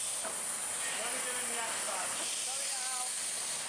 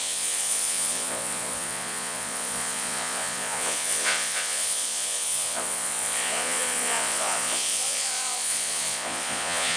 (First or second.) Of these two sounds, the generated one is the second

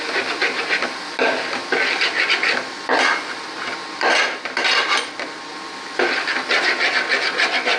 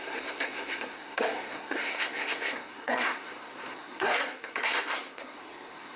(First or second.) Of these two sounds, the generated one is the second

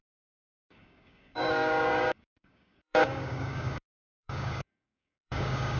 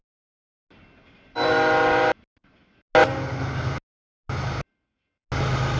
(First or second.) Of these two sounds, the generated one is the first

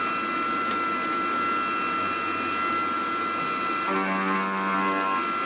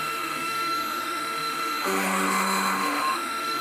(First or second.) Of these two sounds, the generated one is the second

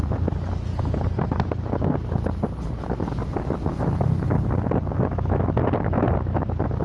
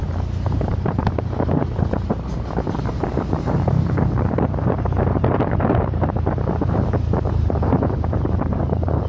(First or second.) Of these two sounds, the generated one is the second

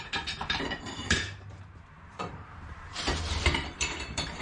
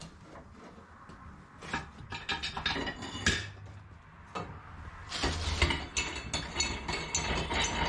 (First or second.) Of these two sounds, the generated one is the first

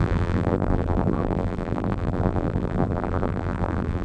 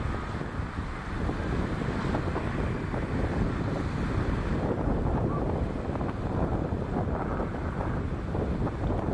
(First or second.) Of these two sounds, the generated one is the first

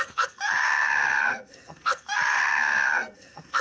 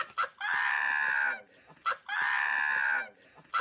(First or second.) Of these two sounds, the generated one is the first